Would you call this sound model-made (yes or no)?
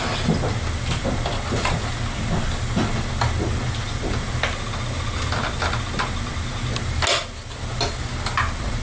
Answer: no